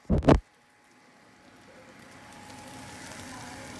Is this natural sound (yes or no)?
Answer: yes